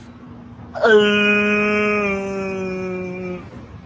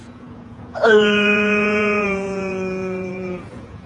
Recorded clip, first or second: first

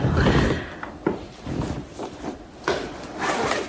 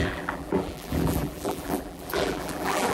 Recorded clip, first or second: first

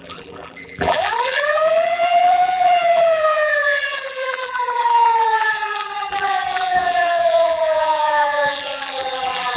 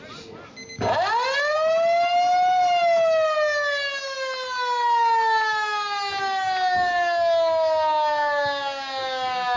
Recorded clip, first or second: second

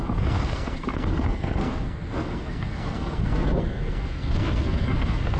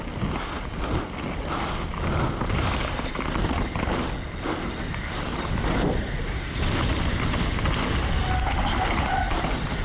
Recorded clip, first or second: second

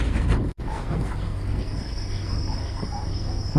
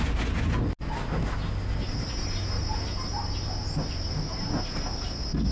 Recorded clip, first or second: second